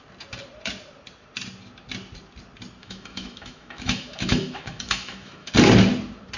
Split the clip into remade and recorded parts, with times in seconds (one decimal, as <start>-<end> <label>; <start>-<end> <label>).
0.0-2.8 recorded; 2.8-5.5 remade; 5.5-6.4 recorded